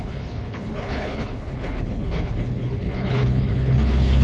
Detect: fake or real fake